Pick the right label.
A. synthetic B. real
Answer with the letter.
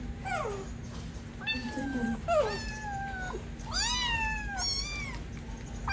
B